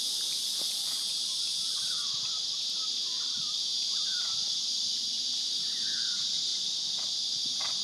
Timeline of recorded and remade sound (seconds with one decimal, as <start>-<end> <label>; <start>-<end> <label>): 0.0-0.4 remade; 0.4-1.1 recorded; 1.1-6.5 remade; 6.5-7.8 recorded